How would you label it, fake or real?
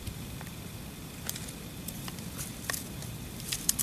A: fake